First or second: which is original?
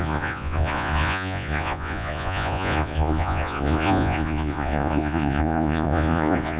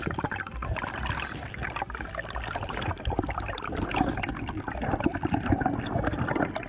second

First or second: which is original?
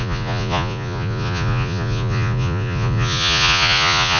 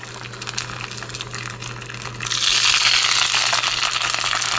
second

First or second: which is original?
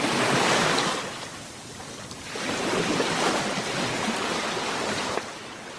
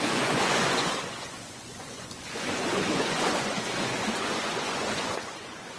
first